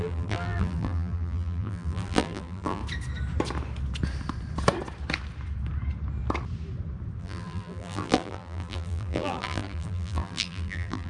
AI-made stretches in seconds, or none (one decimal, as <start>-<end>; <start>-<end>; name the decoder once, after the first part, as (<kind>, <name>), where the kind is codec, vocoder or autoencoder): 0.0-2.8 (vocoder, BigVGAN v2); 7.2-11.1